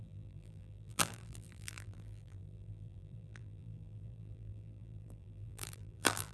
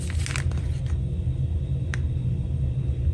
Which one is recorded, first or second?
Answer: second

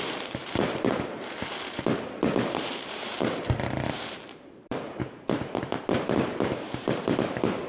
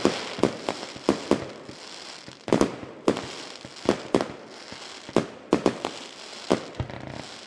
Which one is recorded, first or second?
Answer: second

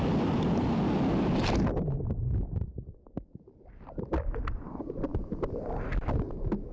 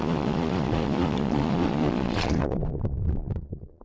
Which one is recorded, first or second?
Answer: first